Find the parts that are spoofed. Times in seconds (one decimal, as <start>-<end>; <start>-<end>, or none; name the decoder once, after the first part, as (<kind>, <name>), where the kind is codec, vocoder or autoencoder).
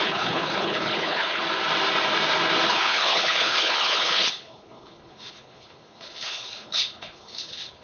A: 0.0-1.4 (codec, HILCodec); 2.7-7.8